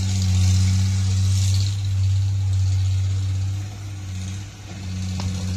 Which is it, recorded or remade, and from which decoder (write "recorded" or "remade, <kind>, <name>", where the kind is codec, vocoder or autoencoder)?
recorded